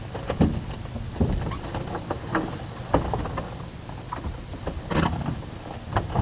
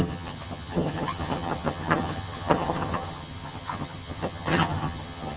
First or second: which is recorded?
first